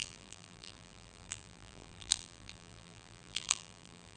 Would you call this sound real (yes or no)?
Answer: no